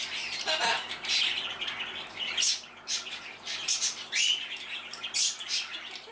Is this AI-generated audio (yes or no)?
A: no